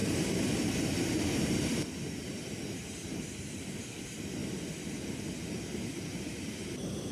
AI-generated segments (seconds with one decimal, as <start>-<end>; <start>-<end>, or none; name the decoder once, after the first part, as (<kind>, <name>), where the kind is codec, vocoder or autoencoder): 0.0-4.4 (vocoder, BigVGAN v2); 6.2-7.1